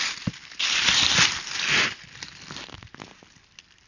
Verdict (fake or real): real